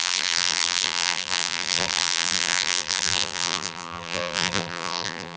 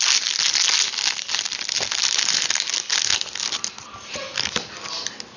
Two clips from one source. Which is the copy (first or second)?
first